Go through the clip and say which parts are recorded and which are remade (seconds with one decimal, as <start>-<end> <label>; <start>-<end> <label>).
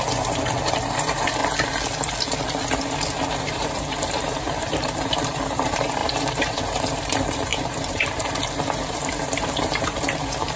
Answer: 0.0-1.4 remade; 1.4-3.4 recorded; 3.4-10.6 remade